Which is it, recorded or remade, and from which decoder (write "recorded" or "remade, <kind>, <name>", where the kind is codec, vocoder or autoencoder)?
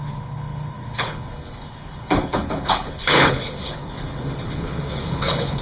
remade, codec, HILCodec